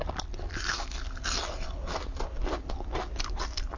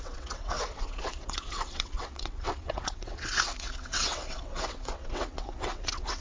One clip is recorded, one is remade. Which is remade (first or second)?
second